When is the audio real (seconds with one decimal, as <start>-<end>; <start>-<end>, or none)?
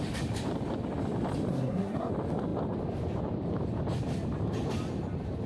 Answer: 0.0-1.5; 2.1-5.5